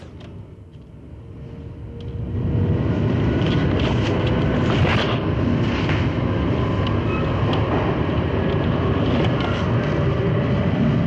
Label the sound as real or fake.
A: real